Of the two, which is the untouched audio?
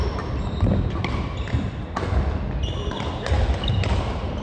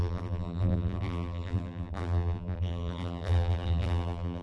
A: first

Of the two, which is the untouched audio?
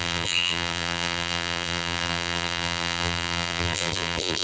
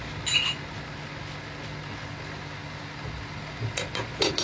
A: second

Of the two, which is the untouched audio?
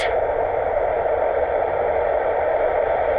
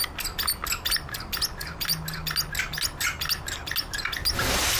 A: second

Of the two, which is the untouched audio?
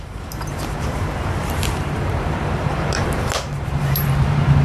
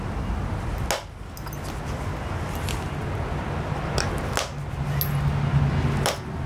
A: second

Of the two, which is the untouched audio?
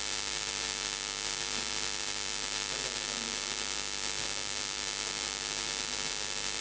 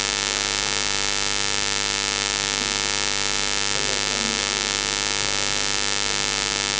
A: second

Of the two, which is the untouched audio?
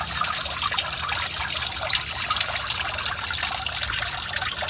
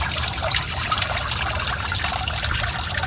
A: first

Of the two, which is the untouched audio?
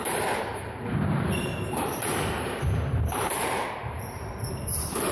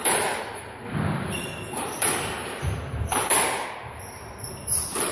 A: second